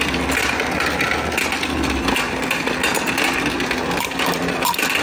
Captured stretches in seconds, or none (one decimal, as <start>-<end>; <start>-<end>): 2.9-3.8